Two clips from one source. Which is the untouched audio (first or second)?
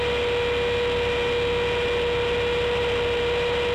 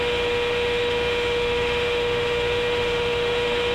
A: first